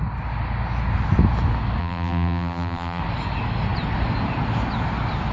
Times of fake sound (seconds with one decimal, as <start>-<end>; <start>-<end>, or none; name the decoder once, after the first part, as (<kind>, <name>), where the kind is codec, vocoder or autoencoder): 1.8-3.0 (vocoder, BigVGAN v2)